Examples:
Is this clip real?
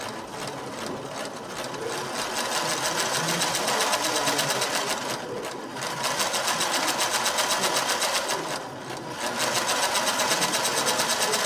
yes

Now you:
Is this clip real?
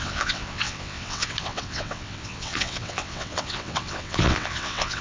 no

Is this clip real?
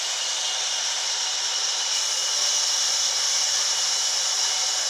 yes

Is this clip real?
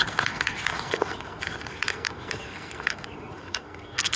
no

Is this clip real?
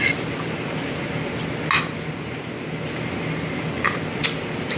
yes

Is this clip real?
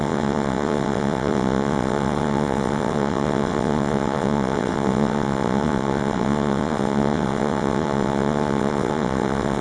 no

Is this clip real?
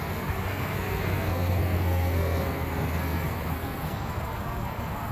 no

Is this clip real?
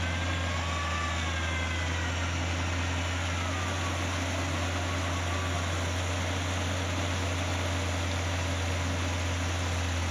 yes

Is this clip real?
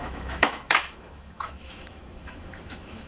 no